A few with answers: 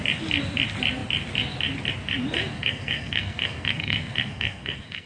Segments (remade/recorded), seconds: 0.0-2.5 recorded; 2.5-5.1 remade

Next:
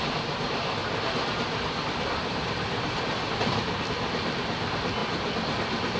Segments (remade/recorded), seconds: 0.0-0.8 recorded; 0.8-3.8 remade; 3.8-6.0 recorded

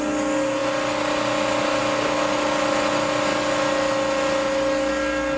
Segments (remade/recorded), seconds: 0.0-5.4 recorded

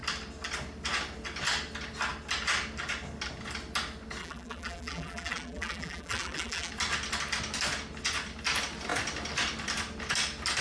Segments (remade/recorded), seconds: 0.0-4.2 recorded; 4.2-6.7 remade; 6.7-10.6 recorded

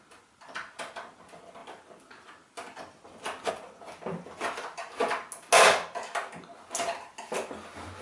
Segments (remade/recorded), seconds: 0.0-8.0 recorded

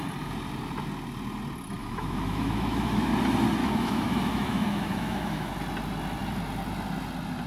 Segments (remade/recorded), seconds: 0.0-1.8 recorded; 1.8-3.1 remade; 3.1-3.6 recorded; 3.6-5.5 remade; 5.5-7.5 recorded

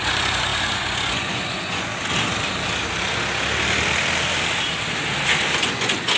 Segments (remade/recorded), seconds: 0.0-1.9 remade; 1.9-5.6 recorded; 5.6-6.2 remade

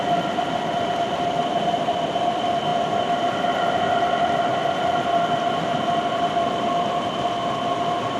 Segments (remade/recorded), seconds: 0.0-8.2 recorded